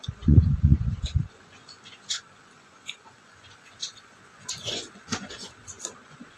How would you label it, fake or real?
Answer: fake